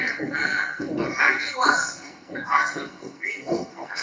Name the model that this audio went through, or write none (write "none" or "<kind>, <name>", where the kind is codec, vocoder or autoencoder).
codec, SNAC